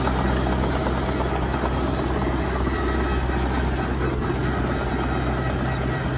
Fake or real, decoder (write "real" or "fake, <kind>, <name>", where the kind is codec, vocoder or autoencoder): real